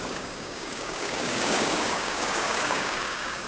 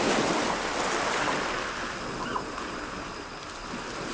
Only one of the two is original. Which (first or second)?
second